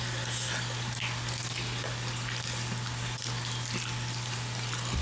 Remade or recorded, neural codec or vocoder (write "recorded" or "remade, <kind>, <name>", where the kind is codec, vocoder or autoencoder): recorded